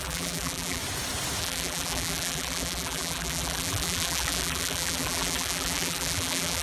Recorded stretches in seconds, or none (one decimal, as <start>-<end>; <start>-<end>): 0.8-1.4